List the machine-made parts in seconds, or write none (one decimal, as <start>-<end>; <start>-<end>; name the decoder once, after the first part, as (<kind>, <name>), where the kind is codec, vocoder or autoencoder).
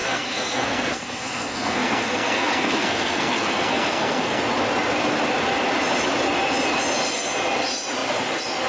0.0-4.4 (codec, SNAC)